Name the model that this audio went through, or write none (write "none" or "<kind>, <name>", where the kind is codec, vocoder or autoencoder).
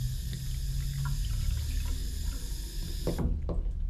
none